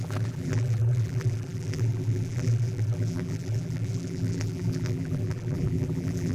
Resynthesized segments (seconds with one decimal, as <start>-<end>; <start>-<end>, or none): 0.0-6.3